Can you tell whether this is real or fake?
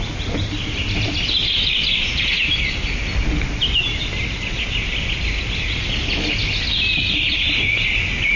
real